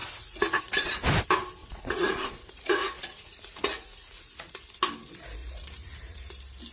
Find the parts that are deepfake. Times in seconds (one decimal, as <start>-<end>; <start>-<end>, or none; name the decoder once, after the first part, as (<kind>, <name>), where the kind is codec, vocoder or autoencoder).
0.0-0.6 (vocoder, Vocos); 1.6-4.5; 5.4-6.3